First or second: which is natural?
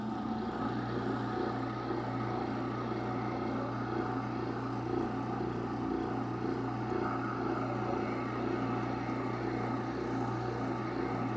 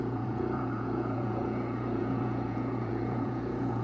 first